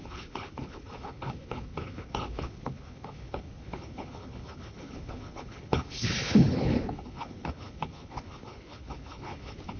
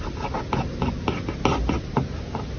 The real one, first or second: second